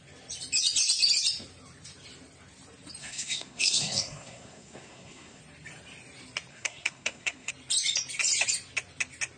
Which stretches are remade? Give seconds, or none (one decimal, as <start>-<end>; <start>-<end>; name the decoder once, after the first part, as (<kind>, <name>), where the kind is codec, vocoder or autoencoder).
3.0-5.4 (codec, SNAC); 6.5-7.5